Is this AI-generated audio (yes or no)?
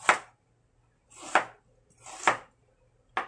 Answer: no